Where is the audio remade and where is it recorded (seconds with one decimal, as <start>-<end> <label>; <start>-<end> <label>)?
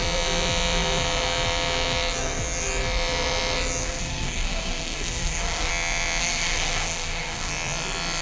0.0-3.8 recorded; 3.8-5.7 remade; 5.7-6.2 recorded; 6.2-7.5 remade; 7.5-8.2 recorded